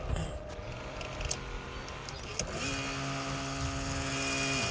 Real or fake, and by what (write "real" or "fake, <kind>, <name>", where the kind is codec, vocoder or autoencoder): real